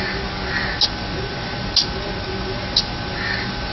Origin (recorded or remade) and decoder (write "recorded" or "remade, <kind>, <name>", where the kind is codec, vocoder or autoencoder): recorded